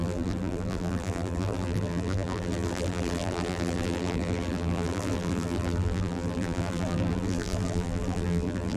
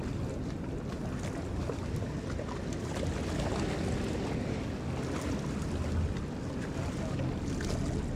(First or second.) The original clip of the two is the second